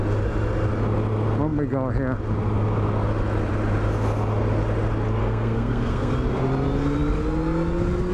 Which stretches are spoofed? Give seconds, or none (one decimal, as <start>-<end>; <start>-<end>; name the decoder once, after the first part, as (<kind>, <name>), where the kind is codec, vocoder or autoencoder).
5.2-6.1 (codec, SNAC)